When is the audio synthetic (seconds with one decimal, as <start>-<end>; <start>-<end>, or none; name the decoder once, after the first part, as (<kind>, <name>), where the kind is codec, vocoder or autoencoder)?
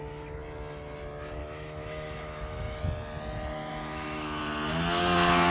1.4-2.8 (autoencoder, DAC-VAE); 3.7-4.4